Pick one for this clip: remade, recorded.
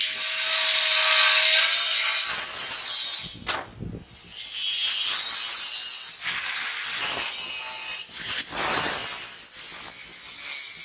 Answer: recorded